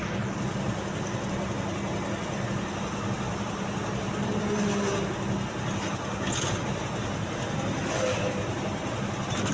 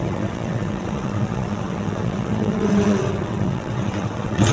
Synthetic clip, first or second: second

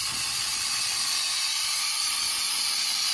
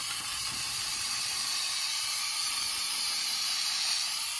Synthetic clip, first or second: second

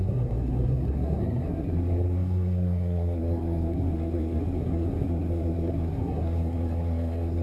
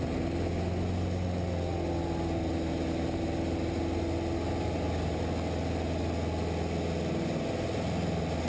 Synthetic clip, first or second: first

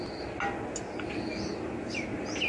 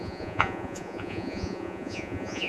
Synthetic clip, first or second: second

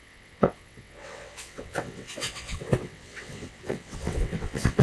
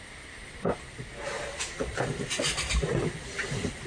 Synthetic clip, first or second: first